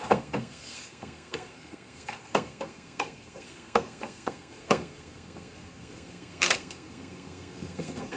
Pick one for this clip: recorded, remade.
remade